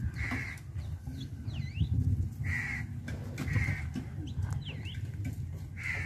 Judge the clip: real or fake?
real